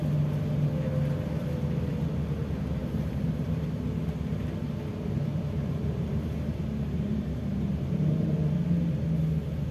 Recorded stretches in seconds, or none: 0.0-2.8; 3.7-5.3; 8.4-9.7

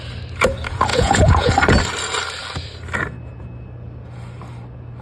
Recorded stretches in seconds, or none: 0.0-0.9; 1.5-5.0

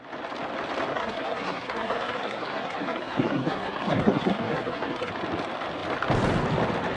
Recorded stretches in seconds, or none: 0.0-0.9; 5.1-7.0

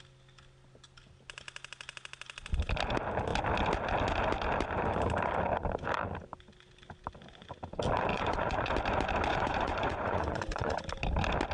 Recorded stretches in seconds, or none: 0.0-8.1; 8.7-9.3; 10.8-11.5

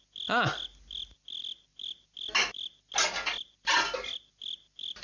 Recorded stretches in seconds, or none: 0.0-5.0

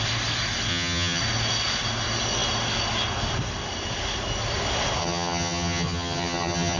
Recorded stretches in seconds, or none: 0.0-0.7; 1.2-5.0